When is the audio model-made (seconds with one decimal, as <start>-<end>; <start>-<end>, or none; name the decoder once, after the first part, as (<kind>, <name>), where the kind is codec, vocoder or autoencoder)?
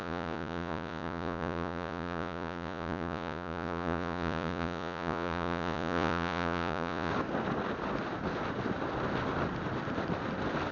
0.0-7.1 (vocoder, Vocos)